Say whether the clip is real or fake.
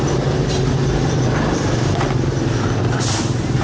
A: real